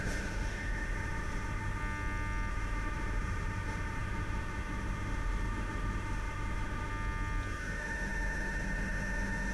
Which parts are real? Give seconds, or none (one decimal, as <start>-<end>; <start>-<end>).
1.8-2.5; 6.9-7.5